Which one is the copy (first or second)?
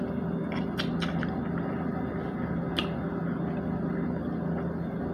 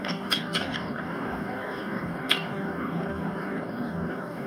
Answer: second